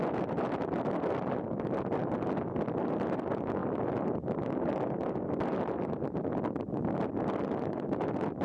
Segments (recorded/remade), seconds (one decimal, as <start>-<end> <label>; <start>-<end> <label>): 0.0-8.4 recorded